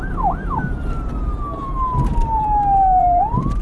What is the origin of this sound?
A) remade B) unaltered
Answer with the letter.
A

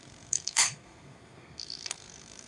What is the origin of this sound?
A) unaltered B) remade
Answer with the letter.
B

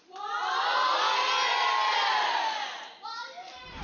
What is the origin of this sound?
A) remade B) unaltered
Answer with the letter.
B